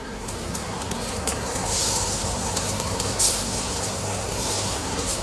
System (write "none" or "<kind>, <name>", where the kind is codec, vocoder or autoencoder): codec, SNAC